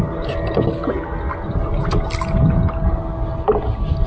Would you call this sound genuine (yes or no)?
yes